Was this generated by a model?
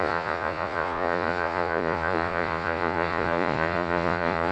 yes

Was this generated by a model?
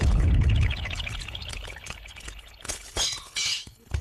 yes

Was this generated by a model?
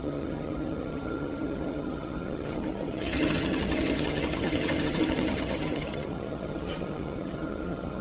yes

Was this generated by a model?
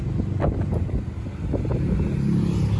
no